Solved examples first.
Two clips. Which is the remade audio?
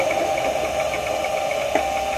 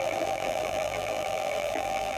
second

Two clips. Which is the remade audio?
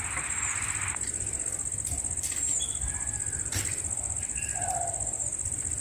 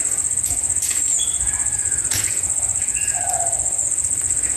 second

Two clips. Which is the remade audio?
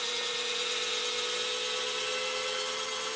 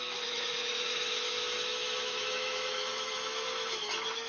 second